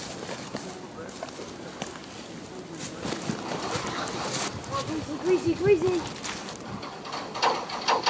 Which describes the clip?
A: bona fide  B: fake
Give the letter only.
A